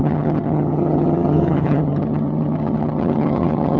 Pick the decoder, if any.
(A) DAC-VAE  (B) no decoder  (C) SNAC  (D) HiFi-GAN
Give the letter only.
D